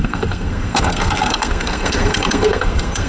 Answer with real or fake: fake